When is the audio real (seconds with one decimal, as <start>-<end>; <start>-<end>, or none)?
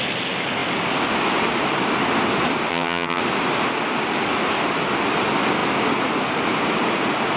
0.0-2.7; 3.2-7.4